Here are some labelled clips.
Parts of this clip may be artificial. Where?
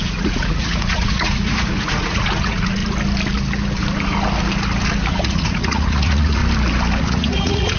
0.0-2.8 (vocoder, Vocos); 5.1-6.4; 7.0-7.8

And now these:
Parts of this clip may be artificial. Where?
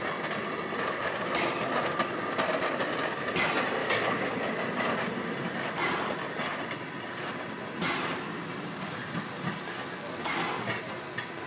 3.8-4.5 (codec, DAC)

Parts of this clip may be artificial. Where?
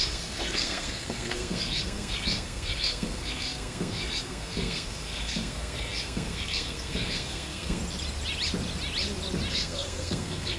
0.0-7.8 (codec, SNAC); 9.5-10.6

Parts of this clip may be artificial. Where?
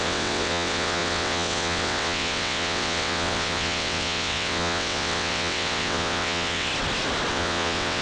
0.0-6.7 (vocoder, WaveNeXt); 7.3-8.0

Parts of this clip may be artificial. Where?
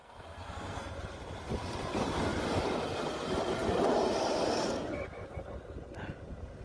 0.0-0.9 (codec, SNAC)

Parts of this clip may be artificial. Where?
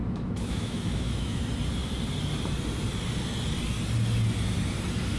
0.0-1.4 (autoencoder, DAC-VAE)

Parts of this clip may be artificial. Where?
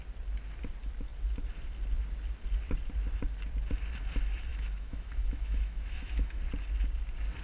4.5-6.4 (autoencoder, DAC-VAE)